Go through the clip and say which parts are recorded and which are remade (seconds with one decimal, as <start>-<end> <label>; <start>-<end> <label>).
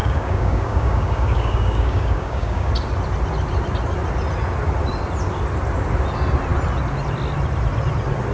0.0-2.7 remade; 2.7-8.3 recorded